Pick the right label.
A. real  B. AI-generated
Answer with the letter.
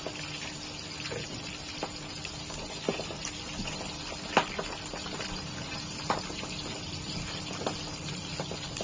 A